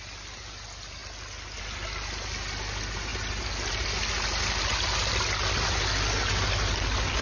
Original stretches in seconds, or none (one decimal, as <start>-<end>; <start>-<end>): 0.0-7.2